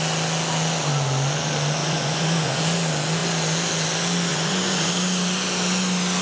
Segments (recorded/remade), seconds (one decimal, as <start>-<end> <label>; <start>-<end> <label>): 0.0-1.8 recorded; 1.8-2.6 remade; 2.6-4.3 recorded; 4.3-4.9 remade; 4.9-6.2 recorded

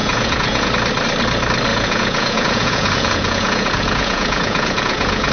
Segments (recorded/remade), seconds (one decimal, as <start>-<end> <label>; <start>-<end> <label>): 0.0-0.7 remade; 0.7-1.7 recorded; 1.7-5.3 remade

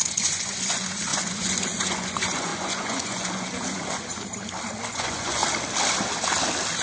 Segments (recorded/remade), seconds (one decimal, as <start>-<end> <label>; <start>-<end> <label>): 0.0-4.1 remade; 4.1-4.9 recorded; 4.9-5.4 remade; 5.4-6.8 recorded

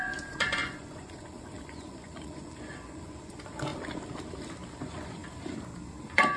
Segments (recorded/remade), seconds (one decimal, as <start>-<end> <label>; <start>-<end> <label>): 0.0-3.7 remade; 3.7-4.8 recorded; 4.8-5.2 remade; 5.2-6.0 recorded; 6.0-6.4 remade

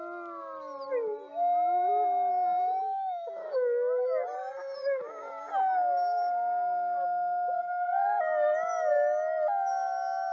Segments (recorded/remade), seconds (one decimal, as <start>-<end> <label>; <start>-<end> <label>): 0.0-10.3 recorded

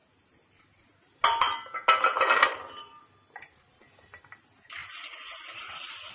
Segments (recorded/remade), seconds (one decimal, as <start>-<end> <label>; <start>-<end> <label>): 0.0-4.8 recorded; 4.8-6.1 remade

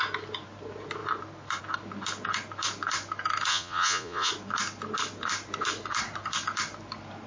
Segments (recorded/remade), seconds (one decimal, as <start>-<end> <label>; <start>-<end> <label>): 0.0-3.5 recorded; 3.5-4.3 remade; 4.3-7.3 recorded